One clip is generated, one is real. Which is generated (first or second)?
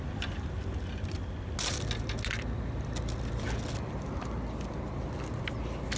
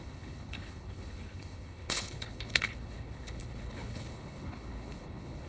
second